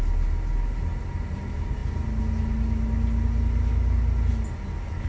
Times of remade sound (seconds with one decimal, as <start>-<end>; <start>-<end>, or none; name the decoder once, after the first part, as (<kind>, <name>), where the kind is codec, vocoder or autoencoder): none